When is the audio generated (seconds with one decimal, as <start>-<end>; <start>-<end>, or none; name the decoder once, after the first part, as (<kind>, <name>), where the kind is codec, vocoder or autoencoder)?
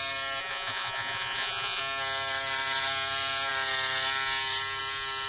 0.4-1.8 (vocoder, Vocos)